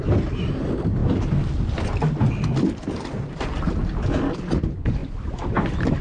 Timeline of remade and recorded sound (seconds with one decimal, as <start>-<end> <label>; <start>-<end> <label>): 0.0-6.0 recorded

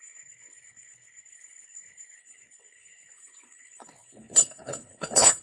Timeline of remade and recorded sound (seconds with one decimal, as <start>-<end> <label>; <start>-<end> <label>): 0.0-5.4 remade

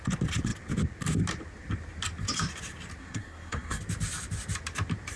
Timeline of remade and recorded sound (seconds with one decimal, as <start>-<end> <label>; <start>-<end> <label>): 0.0-3.0 recorded; 3.0-3.8 remade; 3.8-5.2 recorded

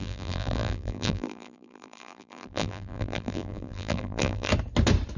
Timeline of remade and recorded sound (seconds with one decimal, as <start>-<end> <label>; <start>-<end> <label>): 0.0-4.5 remade; 4.5-5.2 recorded

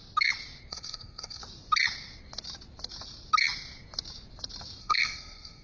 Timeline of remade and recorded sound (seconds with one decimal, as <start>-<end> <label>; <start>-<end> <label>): 0.0-0.7 recorded; 0.7-1.4 remade; 1.4-4.8 recorded; 4.8-5.6 remade

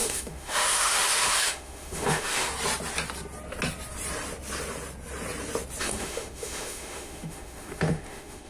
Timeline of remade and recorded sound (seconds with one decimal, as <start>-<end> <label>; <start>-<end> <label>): 0.0-2.5 remade; 2.5-5.8 recorded; 5.8-8.5 remade

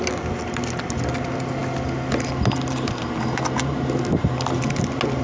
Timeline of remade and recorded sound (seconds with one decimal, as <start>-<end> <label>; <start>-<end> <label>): 0.0-5.2 recorded

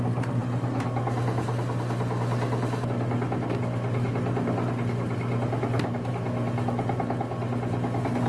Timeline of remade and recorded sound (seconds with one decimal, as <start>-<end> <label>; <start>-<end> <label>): 0.0-8.3 recorded